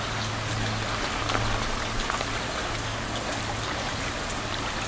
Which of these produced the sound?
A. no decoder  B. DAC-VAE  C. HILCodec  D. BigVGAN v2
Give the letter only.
A